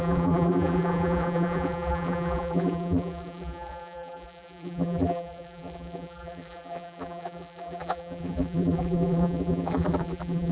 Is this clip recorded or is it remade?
remade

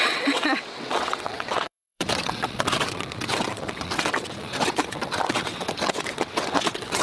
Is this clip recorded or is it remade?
remade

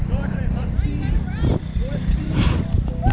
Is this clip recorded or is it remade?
remade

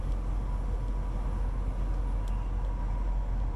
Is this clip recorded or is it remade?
recorded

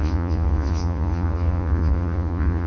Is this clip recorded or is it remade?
remade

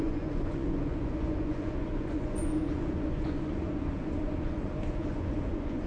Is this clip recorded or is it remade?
remade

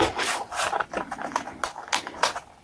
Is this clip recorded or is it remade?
recorded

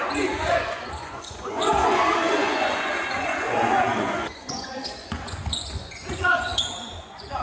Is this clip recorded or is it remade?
remade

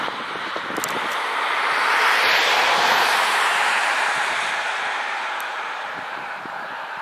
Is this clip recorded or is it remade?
remade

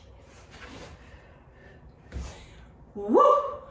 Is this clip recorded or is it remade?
remade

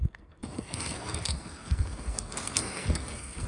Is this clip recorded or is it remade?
remade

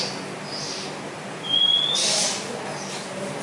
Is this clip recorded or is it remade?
recorded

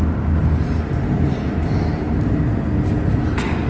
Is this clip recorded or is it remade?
recorded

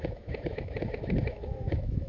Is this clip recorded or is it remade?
remade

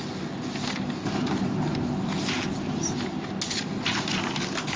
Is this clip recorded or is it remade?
recorded